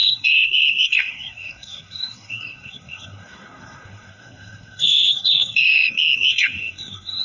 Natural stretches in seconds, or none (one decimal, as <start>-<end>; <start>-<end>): none